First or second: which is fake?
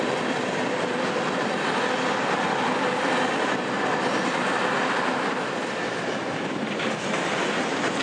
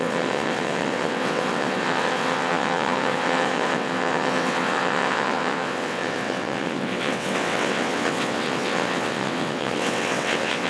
second